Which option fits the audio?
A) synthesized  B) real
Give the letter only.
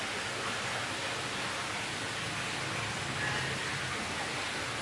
B